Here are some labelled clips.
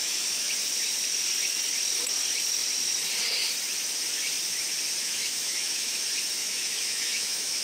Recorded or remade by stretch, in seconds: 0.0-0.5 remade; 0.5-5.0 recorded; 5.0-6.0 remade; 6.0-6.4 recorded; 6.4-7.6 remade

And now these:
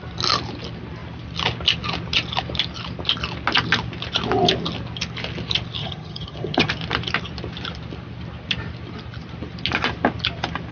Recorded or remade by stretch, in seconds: 0.0-5.8 recorded; 5.8-6.7 remade; 6.7-10.7 recorded